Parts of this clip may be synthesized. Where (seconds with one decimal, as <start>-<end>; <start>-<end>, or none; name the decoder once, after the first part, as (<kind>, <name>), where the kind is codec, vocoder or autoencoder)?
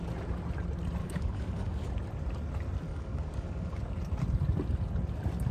1.0-1.9 (codec, DAC); 2.9-3.8